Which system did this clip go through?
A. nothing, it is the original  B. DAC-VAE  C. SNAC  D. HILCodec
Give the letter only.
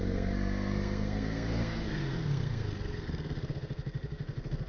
C